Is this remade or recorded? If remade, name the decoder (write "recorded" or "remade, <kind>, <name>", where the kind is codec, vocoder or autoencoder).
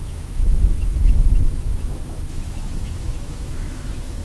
remade, autoencoder, DAC-VAE